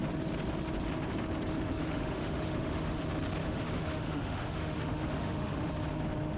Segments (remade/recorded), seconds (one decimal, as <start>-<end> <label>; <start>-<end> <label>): 0.0-1.8 recorded; 1.8-3.0 remade; 3.0-3.4 recorded; 3.4-5.7 remade; 5.7-6.4 recorded